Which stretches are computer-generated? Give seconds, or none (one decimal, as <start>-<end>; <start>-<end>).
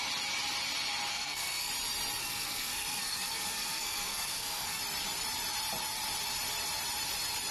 1.1-1.7; 2.2-4.8